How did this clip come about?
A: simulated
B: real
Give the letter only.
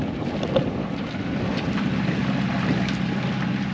B